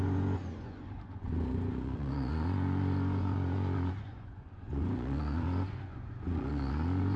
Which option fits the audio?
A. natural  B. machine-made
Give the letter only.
B